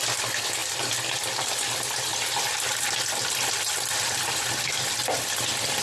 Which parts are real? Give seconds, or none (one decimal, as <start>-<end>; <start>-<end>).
0.0-5.8